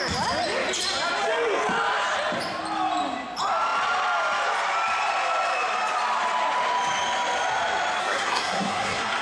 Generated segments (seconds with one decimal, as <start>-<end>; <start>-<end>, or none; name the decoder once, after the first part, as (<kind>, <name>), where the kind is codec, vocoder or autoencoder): 8.0-9.2 (codec, SNAC)